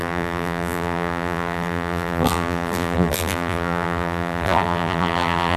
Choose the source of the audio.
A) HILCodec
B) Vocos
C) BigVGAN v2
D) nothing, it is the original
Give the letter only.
C